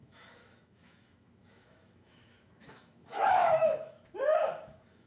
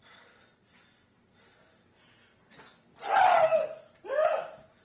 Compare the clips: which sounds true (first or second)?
second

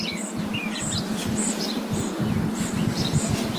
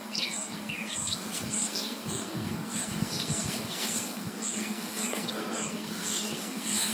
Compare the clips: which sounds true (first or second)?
first